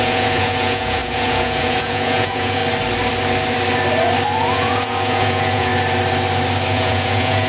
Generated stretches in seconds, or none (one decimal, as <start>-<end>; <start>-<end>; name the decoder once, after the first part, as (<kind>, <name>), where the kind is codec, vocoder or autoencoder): 0.0-2.6 (vocoder, Vocos); 4.5-5.7; 6.7-7.5